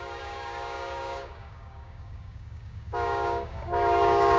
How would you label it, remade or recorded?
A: remade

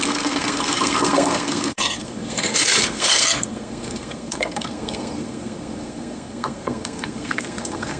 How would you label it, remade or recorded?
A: remade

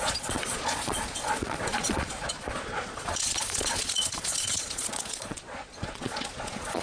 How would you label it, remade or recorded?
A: remade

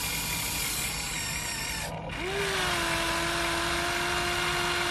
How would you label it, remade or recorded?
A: recorded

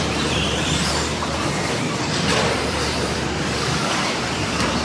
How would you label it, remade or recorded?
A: remade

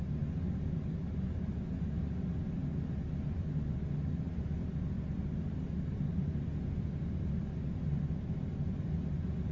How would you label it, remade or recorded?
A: recorded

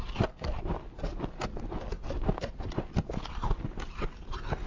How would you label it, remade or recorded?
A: recorded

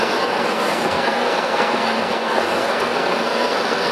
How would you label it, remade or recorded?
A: remade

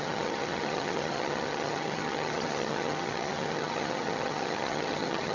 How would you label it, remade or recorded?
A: remade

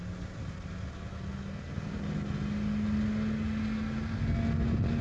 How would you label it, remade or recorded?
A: recorded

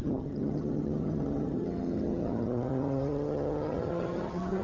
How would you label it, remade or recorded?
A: remade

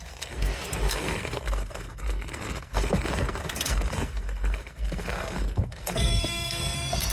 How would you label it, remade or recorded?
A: remade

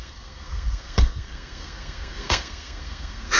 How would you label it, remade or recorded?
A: remade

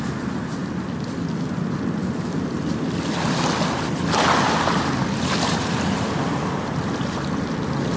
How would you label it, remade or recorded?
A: recorded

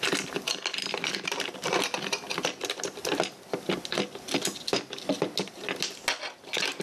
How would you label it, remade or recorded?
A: recorded